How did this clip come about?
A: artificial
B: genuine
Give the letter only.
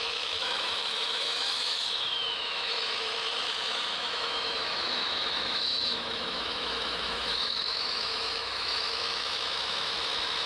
A